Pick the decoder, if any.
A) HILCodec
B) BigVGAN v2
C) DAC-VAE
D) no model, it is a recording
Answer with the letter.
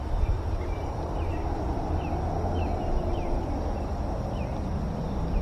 D